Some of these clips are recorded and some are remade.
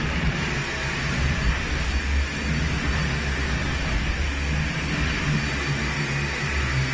recorded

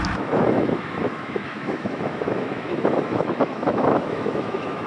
remade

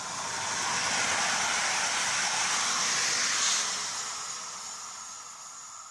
recorded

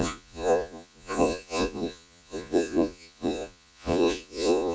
remade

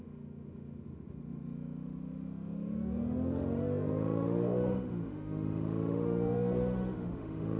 remade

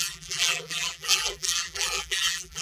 remade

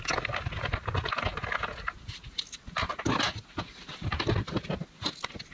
recorded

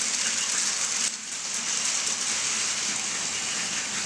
recorded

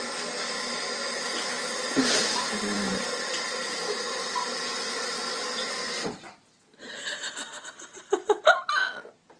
recorded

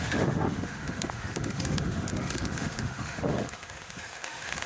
remade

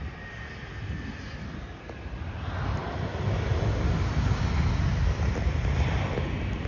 recorded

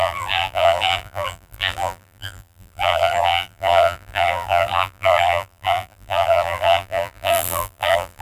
remade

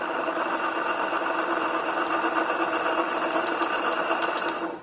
recorded